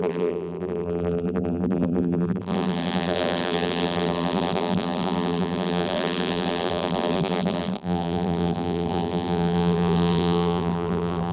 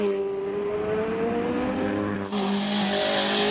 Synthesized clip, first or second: first